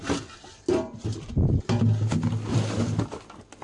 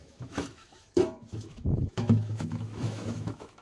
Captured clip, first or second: first